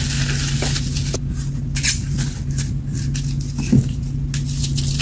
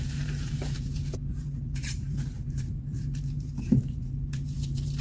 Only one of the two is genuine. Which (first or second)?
first